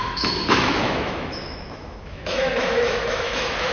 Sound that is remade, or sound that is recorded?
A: remade